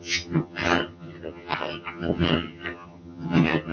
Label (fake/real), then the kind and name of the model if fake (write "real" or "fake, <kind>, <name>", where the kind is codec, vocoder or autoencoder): fake, vocoder, HiFi-GAN